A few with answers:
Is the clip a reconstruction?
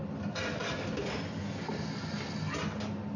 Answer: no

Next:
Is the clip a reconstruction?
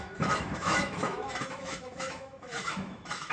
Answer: yes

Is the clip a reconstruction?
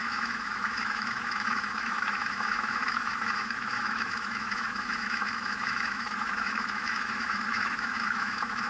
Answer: yes